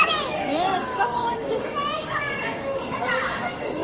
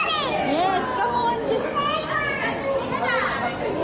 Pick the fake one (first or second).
first